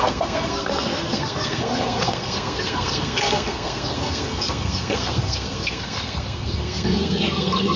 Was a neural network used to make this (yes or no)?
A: yes